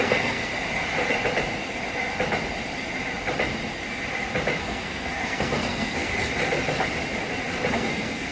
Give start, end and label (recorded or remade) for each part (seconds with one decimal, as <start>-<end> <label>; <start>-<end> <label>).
0.0-0.5 remade; 0.5-4.6 recorded; 4.6-6.1 remade; 6.1-7.7 recorded; 7.7-8.3 remade

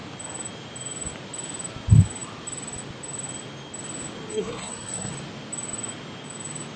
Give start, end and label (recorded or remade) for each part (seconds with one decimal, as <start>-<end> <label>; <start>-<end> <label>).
0.0-4.3 recorded; 4.3-5.1 remade; 5.1-6.8 recorded

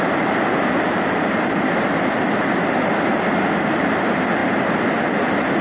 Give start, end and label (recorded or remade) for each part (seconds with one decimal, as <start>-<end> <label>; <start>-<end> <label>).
0.0-5.6 recorded

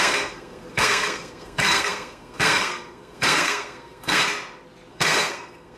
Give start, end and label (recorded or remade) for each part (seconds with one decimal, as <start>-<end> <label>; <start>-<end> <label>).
0.0-4.2 remade; 4.2-4.9 recorded; 4.9-5.8 remade

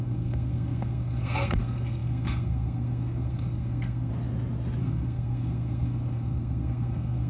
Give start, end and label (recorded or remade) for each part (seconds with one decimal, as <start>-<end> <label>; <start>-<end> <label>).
0.0-4.1 remade; 4.1-4.8 recorded; 4.8-7.3 remade

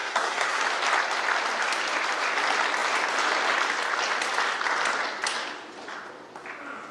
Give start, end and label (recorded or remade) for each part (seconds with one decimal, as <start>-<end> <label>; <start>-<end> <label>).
0.0-0.6 remade; 0.6-6.9 recorded